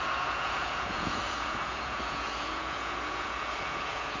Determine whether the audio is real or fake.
fake